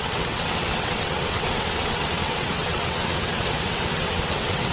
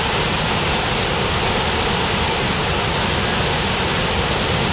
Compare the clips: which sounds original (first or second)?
second